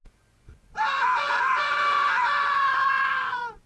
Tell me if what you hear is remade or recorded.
remade